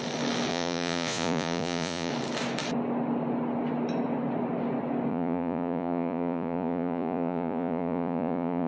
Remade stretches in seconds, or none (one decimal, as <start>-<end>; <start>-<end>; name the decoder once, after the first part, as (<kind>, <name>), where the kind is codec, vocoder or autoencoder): 0.5-2.1 (vocoder, Vocos); 5.1-8.7